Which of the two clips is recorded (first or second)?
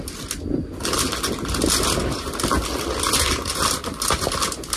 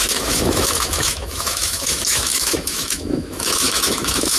first